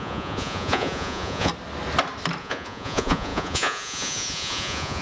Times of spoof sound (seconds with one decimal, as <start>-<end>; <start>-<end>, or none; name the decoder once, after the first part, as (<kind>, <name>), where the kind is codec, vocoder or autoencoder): 0.0-1.5 (vocoder, Vocos); 2.4-5.0

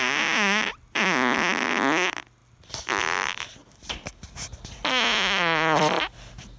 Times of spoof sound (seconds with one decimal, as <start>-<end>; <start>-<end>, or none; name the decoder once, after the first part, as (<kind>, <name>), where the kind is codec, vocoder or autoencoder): none

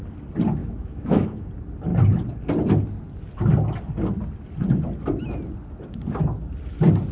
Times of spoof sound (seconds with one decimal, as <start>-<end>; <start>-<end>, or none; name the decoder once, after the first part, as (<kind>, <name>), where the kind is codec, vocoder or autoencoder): 0.6-1.5 (autoencoder, DAC-VAE)

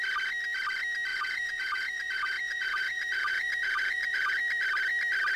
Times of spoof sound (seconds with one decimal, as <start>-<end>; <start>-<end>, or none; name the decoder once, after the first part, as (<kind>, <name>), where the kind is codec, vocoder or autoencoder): 1.1-4.3 (vocoder, Vocos)

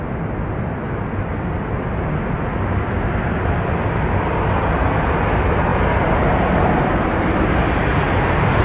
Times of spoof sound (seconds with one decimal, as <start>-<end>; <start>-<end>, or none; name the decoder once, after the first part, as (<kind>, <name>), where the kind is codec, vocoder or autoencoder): none

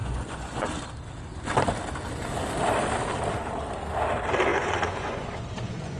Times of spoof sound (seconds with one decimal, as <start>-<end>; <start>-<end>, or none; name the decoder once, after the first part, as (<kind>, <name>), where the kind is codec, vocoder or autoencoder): 0.0-0.7 (vocoder, Vocos); 4.5-6.0

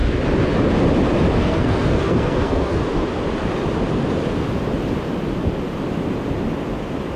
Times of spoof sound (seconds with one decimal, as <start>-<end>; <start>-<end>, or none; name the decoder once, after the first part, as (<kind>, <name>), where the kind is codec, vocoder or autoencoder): 1.4-2.8 (codec, SNAC)

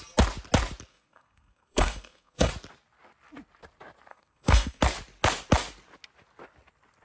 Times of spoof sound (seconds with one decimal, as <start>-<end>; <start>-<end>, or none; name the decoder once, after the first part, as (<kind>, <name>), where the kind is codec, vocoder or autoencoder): 0.9-2.5 (codec, SNAC); 4.1-4.8